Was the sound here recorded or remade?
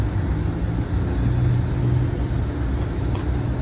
recorded